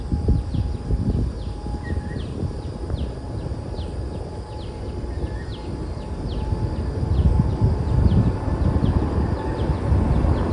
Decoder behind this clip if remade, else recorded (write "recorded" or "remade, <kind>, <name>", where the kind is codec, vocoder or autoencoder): recorded